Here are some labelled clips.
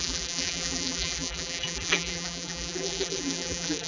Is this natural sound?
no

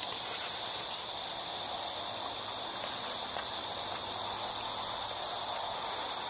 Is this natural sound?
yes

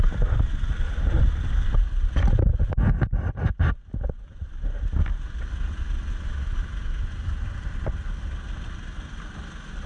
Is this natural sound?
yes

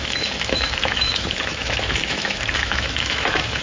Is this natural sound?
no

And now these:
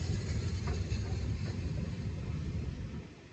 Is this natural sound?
yes